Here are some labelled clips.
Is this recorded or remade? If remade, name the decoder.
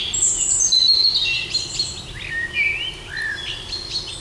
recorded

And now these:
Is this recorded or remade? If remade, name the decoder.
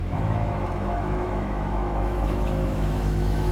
remade, autoencoder, DAC-VAE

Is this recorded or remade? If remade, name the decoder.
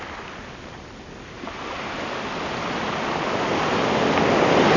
recorded